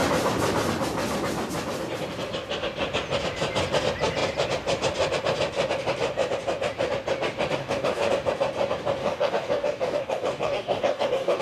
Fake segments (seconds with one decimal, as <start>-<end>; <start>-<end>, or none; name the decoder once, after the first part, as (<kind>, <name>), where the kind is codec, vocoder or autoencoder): 7.6-8.1 (codec, DAC); 9.0-11.4